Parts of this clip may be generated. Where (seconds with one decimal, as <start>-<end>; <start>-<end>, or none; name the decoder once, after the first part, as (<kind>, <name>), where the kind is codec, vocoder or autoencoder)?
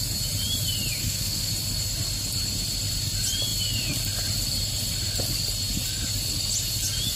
1.0-1.5 (autoencoder, DAC-VAE)